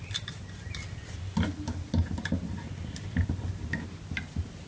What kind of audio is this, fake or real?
real